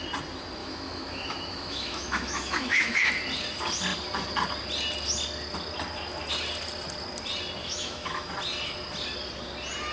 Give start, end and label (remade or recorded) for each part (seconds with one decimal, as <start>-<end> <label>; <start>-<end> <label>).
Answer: 0.0-0.6 recorded; 0.6-3.1 remade; 3.1-7.6 recorded; 7.6-8.3 remade; 8.3-9.9 recorded